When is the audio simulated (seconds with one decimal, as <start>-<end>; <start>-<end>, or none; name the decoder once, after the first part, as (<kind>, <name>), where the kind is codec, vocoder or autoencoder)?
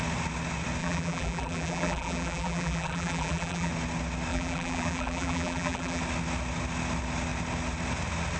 0.8-3.7 (vocoder, BigVGAN v2); 4.3-6.0